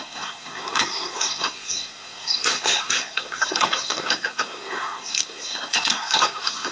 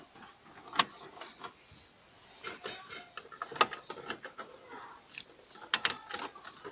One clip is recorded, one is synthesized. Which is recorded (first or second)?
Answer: second